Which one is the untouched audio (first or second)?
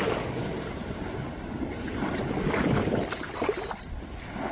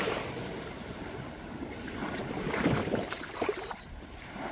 first